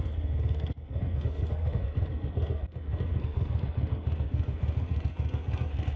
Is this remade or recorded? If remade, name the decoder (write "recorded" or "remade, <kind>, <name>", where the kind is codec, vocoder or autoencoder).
remade, codec, SNAC